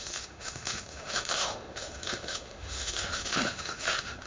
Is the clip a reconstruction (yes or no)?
yes